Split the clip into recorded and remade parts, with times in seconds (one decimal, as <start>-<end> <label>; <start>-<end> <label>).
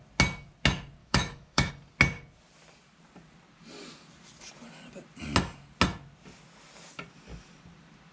0.0-1.0 recorded; 1.0-1.7 remade; 1.7-8.1 recorded